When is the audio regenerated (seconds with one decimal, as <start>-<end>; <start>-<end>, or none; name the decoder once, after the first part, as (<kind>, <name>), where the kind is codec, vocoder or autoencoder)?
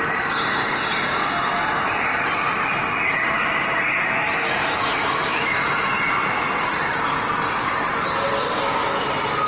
none